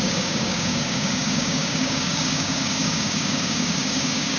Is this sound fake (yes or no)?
yes